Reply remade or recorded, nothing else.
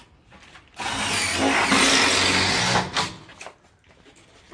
recorded